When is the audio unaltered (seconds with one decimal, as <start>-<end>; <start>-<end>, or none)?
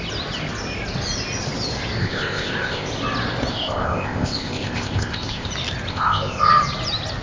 0.0-2.0; 2.9-3.5; 5.5-5.9; 6.5-7.2